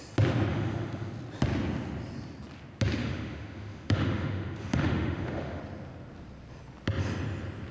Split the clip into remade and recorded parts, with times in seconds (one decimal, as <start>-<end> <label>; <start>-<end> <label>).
0.0-0.5 recorded; 0.5-1.1 remade; 1.1-3.0 recorded; 3.0-5.6 remade; 5.6-7.7 recorded